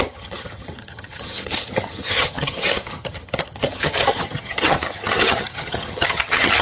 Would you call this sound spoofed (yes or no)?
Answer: yes